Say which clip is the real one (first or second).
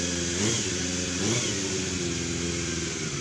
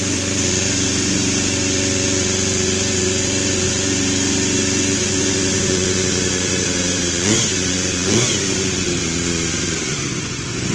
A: first